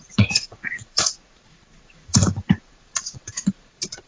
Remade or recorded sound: remade